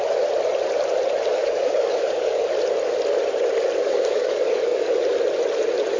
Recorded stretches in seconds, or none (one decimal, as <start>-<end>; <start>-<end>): 0.0-1.3; 2.5-3.8; 4.9-6.0